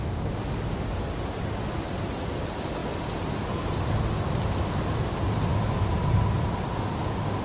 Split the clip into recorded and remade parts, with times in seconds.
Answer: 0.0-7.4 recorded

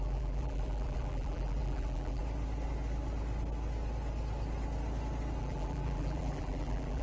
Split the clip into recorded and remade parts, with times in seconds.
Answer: 0.0-2.2 remade; 2.2-5.4 recorded; 5.4-7.0 remade

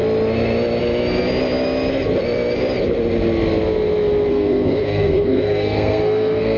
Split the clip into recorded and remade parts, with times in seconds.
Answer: 0.0-4.3 recorded; 4.3-6.6 remade

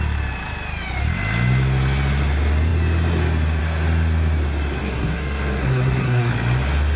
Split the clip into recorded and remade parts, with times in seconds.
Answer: 0.0-4.8 recorded; 4.8-6.3 remade; 6.3-7.0 recorded

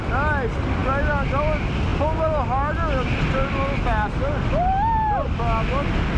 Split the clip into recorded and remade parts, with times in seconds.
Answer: 0.0-6.2 recorded

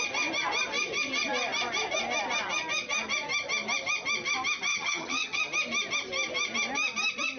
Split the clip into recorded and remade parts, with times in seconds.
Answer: 0.0-4.7 recorded; 4.7-5.4 remade; 5.4-7.4 recorded